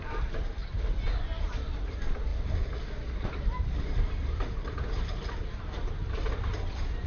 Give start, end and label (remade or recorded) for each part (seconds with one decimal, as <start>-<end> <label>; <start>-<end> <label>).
0.0-0.6 remade; 0.6-1.4 recorded; 1.4-2.3 remade; 2.3-3.2 recorded; 3.2-7.1 remade